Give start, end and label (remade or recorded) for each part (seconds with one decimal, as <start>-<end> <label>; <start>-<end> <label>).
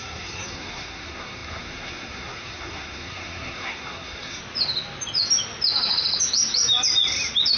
0.0-4.4 remade; 4.4-7.6 recorded